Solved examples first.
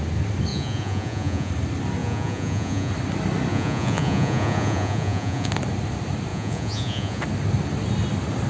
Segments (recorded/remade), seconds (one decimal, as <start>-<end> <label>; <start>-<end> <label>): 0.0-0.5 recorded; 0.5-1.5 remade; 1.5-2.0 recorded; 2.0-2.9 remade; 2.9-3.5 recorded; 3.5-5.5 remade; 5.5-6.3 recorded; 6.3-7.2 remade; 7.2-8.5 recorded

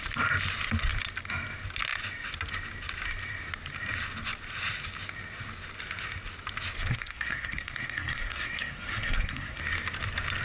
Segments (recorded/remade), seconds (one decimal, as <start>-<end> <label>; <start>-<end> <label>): 0.0-6.9 recorded; 6.9-9.6 remade; 9.6-10.4 recorded

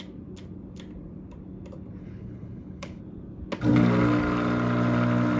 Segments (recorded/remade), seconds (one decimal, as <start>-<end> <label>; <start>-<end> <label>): 0.0-2.0 recorded; 2.0-3.0 remade; 3.0-5.4 recorded

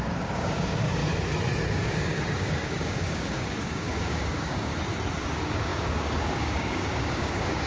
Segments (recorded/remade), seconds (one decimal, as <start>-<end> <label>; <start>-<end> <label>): 0.0-1.0 remade; 1.0-1.7 recorded; 1.7-4.7 remade; 4.7-5.2 recorded; 5.2-7.7 remade

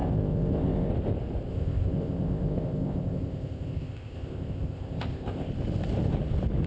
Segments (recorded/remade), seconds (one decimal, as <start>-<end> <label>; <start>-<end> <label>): 0.0-0.9 remade; 0.9-1.5 recorded; 1.5-5.5 remade; 5.5-6.7 recorded

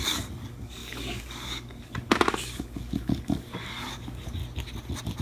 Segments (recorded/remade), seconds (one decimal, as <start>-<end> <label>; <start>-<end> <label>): 0.0-4.4 remade; 4.4-5.2 recorded

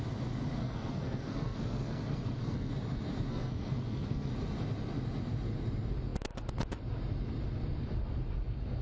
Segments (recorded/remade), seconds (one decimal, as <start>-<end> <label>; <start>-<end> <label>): 0.0-0.6 recorded; 0.6-2.7 remade; 2.7-3.3 recorded; 3.3-4.3 remade; 4.3-8.8 recorded